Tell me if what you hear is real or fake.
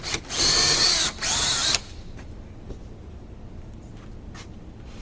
real